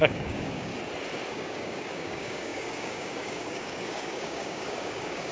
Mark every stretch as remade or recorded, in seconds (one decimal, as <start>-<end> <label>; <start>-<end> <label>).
0.0-0.7 remade; 0.7-1.3 recorded; 1.3-5.3 remade